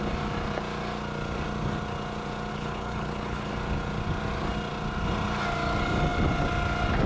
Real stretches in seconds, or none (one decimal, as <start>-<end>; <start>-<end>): 0.0-2.5; 3.5-7.1